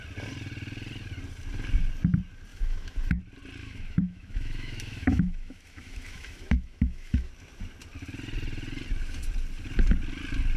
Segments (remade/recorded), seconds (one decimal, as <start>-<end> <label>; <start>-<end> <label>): 0.0-2.5 recorded; 2.5-3.2 remade; 3.2-3.6 recorded; 3.6-7.3 remade; 7.3-10.6 recorded